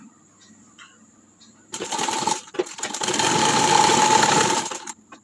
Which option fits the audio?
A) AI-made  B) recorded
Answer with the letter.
A